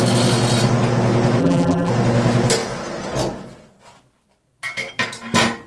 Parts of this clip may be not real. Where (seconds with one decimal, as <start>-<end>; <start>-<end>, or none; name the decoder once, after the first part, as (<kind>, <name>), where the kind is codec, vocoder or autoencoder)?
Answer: 1.4-1.9 (vocoder, BigVGAN v2)